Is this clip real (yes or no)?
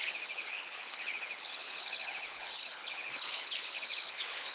no